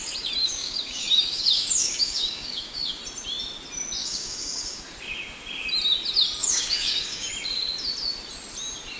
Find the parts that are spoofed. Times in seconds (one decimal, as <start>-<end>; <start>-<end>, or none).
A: 0.4-3.0; 4.0-4.8; 6.4-7.3

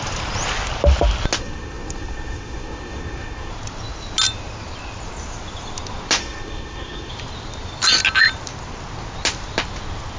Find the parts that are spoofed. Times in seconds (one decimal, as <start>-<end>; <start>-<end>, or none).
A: 1.4-3.5; 6.2-7.1

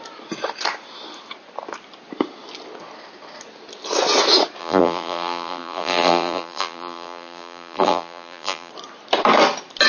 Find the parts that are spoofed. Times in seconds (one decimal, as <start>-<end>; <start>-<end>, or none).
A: 4.6-8.7